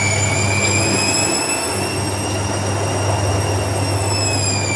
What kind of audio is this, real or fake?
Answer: real